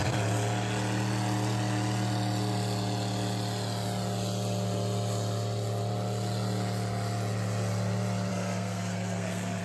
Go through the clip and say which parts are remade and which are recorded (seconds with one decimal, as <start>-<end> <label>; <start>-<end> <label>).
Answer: 0.0-8.3 recorded; 8.3-9.6 remade